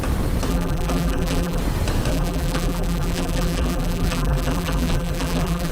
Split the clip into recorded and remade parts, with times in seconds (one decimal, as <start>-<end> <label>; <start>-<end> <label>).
0.0-0.5 recorded; 0.5-1.6 remade; 1.6-2.1 recorded; 2.1-5.7 remade